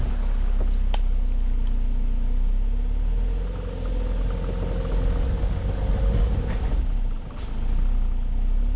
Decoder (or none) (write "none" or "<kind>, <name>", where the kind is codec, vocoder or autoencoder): none